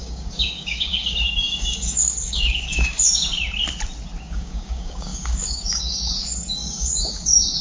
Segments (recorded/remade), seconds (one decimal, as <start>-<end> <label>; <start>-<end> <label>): 0.0-3.2 remade; 3.2-4.2 recorded; 4.2-7.6 remade